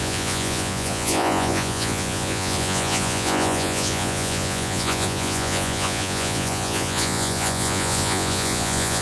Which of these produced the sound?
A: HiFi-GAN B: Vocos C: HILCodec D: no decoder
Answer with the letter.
B